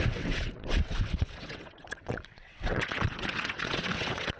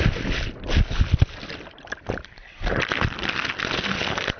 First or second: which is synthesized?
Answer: first